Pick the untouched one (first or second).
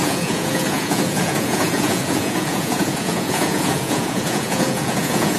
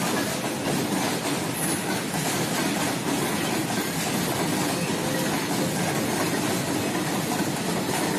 second